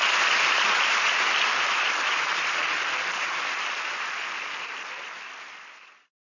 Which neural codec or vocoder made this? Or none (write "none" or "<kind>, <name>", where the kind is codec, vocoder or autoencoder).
none